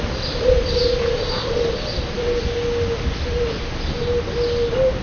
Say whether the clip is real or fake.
real